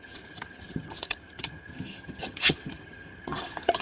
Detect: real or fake fake